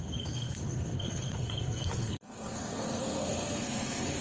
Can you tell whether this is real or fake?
fake